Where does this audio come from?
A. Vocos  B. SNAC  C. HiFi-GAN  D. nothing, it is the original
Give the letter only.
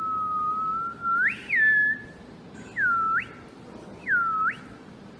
D